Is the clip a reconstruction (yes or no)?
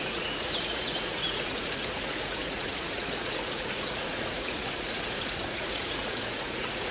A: yes